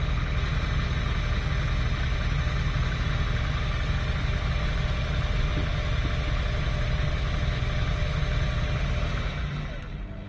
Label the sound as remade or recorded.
recorded